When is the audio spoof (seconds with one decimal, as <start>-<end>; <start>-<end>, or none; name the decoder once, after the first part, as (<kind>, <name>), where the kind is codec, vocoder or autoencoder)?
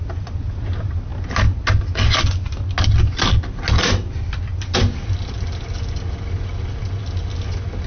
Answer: none